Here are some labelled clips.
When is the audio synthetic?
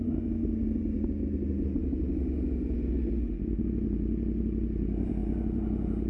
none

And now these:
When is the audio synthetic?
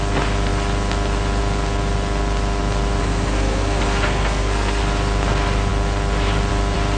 3.0-4.8 (codec, SNAC)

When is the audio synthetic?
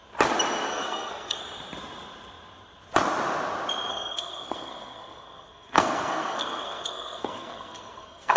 0.7-1.4 (codec, SNAC); 3.9-8.4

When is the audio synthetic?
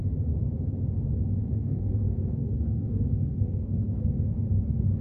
1.4-4.4 (codec, SNAC)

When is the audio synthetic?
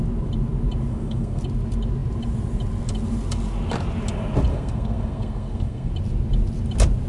0.9-1.4 (codec, SNAC); 4.5-5.9